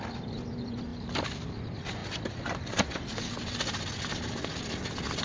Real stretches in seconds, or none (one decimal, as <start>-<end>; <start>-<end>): 0.0-5.2